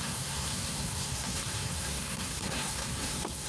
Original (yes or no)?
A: no